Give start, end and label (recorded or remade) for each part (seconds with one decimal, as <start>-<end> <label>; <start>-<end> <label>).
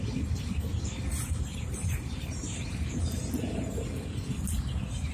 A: 0.0-1.5 recorded; 1.5-3.7 remade; 3.7-5.1 recorded